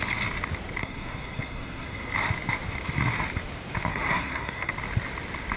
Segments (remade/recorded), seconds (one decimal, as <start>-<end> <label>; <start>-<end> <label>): 0.0-0.8 recorded; 0.8-2.1 remade; 2.1-3.9 recorded; 3.9-4.7 remade; 4.7-5.6 recorded